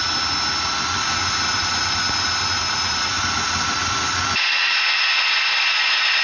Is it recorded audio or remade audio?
recorded